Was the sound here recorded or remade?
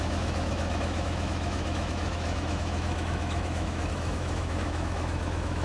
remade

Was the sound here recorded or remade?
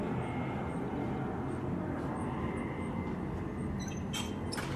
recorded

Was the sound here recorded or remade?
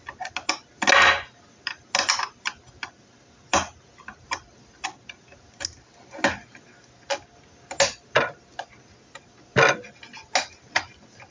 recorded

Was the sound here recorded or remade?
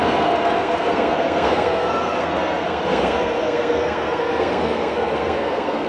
remade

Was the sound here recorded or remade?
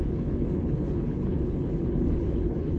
remade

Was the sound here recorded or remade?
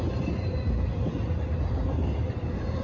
recorded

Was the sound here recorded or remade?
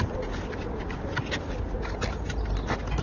recorded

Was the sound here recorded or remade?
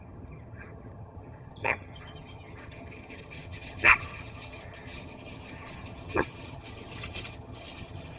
remade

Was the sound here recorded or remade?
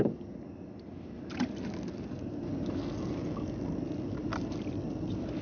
recorded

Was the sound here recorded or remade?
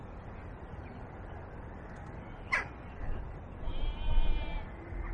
remade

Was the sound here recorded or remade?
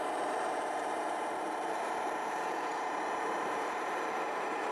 remade